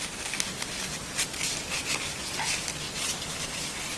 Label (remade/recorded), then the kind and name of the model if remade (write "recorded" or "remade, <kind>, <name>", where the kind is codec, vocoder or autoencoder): recorded